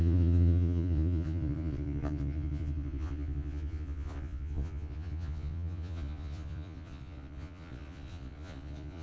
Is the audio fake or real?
fake